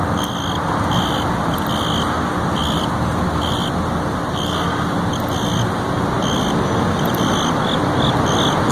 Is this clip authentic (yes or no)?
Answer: yes